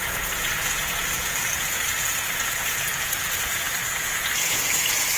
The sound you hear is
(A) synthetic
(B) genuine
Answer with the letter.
A